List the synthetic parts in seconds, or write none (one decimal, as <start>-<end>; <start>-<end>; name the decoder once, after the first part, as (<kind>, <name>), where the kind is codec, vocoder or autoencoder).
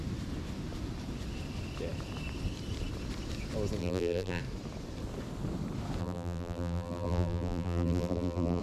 3.8-4.4 (vocoder, BigVGAN v2); 6.0-8.6